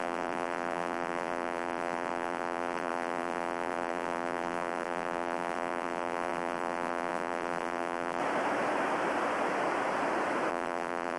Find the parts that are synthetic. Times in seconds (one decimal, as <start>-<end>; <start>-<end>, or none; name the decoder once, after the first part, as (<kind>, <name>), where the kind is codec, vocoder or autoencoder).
0.0-8.2 (vocoder, BigVGAN v2); 10.5-11.2